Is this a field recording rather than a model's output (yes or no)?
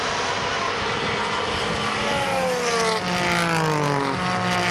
yes